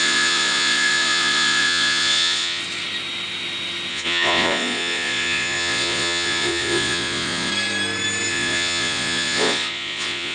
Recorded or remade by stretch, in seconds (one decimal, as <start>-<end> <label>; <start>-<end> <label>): 0.0-2.6 remade; 2.6-3.9 recorded; 3.9-7.5 remade; 7.5-8.3 recorded; 8.3-10.3 remade